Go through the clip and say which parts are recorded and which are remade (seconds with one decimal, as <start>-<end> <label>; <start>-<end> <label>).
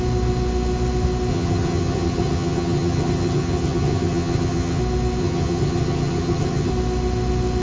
0.0-1.3 recorded; 1.3-4.8 remade; 4.8-5.2 recorded; 5.2-6.7 remade; 6.7-7.6 recorded